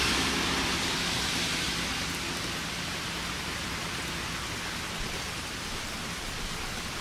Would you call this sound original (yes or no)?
yes